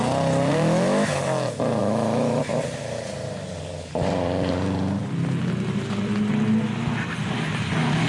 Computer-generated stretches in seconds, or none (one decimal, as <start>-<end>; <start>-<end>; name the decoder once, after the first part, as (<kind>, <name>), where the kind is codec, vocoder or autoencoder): 0.5-1.2 (autoencoder, DAC-VAE); 1.8-2.4